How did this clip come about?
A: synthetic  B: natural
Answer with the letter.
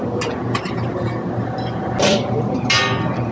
B